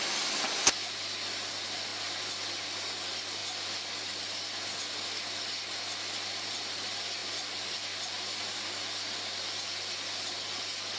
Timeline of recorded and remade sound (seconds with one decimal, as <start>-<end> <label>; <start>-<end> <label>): 0.0-11.0 recorded